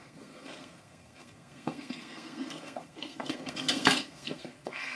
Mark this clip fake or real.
fake